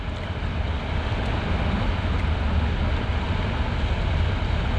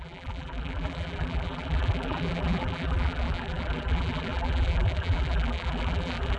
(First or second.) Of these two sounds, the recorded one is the first